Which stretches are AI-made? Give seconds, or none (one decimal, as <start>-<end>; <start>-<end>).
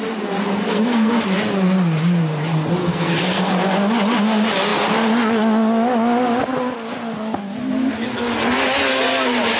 0.6-1.2; 2.8-3.5